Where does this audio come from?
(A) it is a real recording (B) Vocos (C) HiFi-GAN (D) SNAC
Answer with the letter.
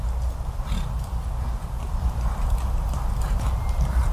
A